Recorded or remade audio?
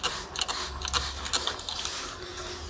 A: recorded